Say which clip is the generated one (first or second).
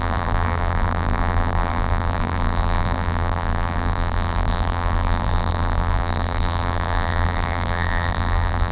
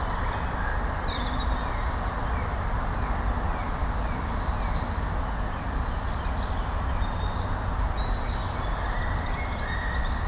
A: first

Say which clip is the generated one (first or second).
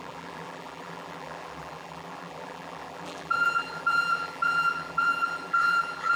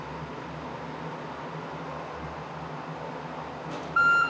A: first